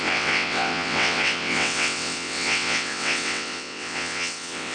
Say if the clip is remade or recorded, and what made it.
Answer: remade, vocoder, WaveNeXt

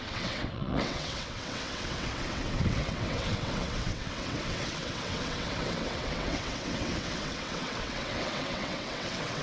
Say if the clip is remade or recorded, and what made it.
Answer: remade, vocoder, WaveNeXt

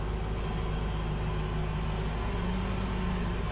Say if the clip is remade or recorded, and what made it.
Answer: recorded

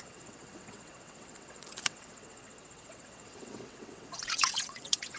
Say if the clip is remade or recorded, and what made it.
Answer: remade, vocoder, WaveNeXt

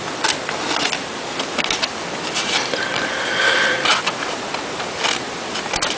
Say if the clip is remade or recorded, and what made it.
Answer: recorded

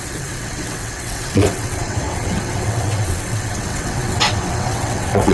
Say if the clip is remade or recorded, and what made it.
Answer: remade, vocoder, WaveNeXt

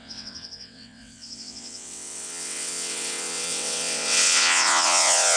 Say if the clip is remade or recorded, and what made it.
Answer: remade, vocoder, WaveNeXt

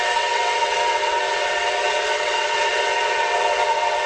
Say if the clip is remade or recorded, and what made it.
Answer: remade, vocoder, WaveNeXt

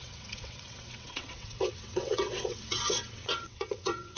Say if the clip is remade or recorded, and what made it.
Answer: remade, vocoder, WaveNeXt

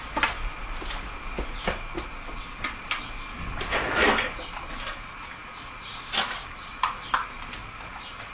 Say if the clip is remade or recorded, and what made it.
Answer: recorded